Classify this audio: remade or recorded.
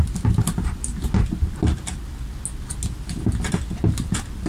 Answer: recorded